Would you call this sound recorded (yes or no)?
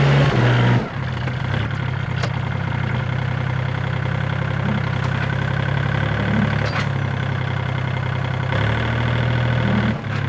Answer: yes